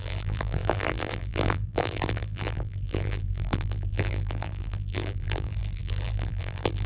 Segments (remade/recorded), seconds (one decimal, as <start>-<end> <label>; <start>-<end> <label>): 0.0-6.9 remade